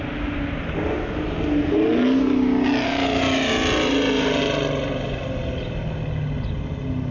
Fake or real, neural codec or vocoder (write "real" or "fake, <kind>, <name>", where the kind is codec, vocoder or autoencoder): real